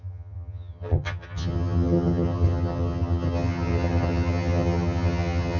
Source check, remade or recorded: remade